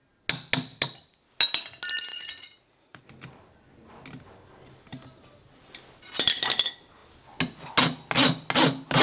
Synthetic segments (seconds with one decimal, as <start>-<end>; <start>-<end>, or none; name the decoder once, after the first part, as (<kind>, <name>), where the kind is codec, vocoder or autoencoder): 2.1-3.0 (vocoder, Vocos)